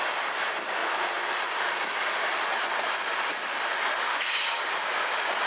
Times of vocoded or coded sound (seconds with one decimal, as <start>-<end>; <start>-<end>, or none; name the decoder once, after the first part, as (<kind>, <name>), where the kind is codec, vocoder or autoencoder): 4.1-4.7 (codec, DAC)